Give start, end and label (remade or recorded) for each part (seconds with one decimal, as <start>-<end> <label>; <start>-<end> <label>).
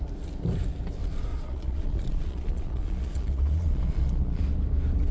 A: 0.0-1.3 recorded; 1.3-4.4 remade; 4.4-5.1 recorded